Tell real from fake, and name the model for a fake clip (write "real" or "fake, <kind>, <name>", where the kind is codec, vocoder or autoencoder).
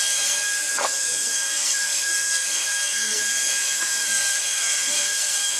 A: fake, codec, SNAC